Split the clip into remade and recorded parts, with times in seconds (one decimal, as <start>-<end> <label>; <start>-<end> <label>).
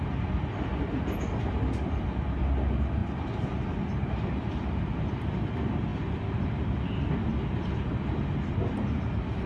0.0-9.5 recorded